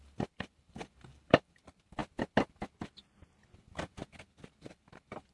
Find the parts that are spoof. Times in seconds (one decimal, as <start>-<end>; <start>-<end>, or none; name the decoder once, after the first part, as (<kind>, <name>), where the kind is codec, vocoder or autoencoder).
0.0-2.0 (vocoder, BigVGAN v2); 3.6-4.0; 4.6-5.3